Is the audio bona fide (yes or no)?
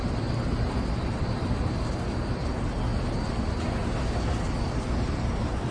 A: yes